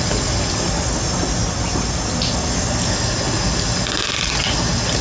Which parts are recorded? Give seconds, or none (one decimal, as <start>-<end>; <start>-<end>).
0.0-5.0